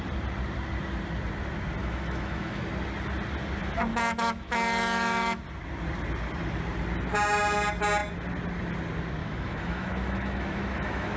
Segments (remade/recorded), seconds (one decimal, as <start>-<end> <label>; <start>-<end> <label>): 0.0-1.8 recorded; 1.8-2.6 remade; 2.6-3.9 recorded; 3.9-5.4 remade; 5.4-9.2 recorded; 9.2-11.2 remade